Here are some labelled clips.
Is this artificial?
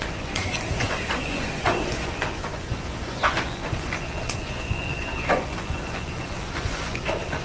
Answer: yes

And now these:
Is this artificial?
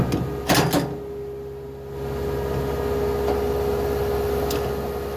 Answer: no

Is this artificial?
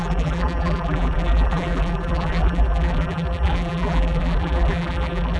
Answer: yes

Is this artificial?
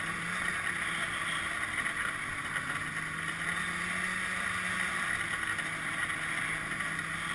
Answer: no